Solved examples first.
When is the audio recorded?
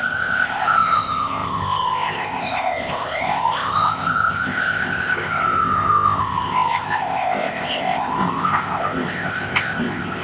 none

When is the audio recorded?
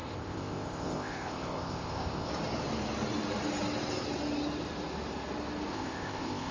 2.3-5.7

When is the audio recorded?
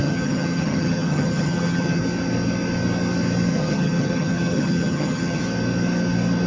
2.0-3.5; 5.4-6.5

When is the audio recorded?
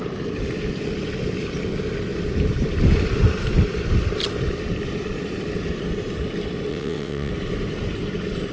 0.0-6.7; 7.3-8.5